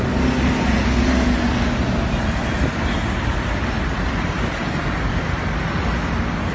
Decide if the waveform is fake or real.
real